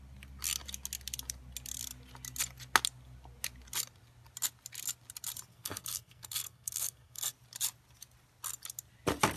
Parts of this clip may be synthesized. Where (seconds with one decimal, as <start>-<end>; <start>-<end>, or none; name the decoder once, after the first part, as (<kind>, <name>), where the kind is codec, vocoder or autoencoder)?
5.5-7.3 (codec, SNAC)